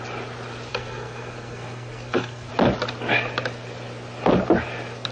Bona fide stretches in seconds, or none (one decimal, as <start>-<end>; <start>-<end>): 0.0-0.7; 2.5-5.1